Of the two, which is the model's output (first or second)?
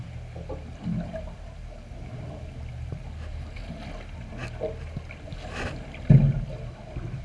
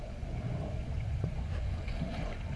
second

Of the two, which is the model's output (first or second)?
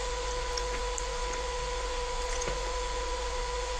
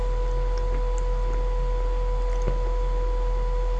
first